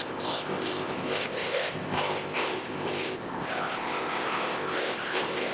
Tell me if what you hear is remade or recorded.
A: remade